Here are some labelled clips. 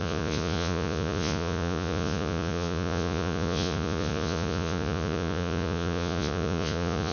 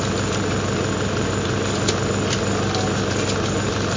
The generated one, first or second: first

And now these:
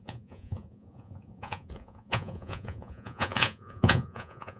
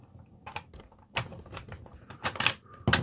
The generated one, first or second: first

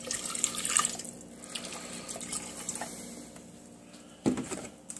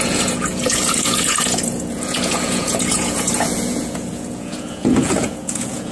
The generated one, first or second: second